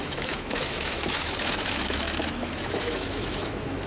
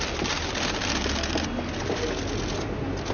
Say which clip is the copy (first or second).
first